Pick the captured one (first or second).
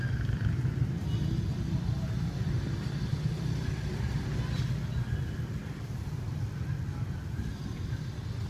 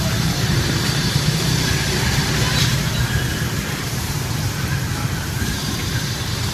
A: first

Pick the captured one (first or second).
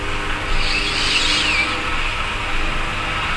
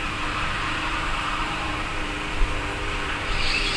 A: first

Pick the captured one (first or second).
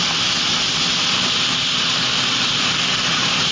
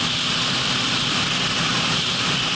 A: first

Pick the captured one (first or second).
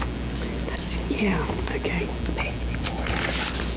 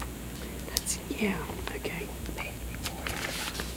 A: first